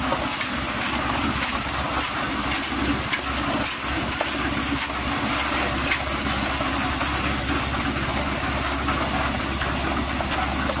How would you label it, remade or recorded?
recorded